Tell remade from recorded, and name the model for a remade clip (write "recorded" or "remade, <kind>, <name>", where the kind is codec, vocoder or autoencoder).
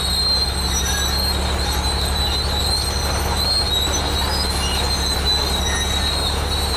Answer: recorded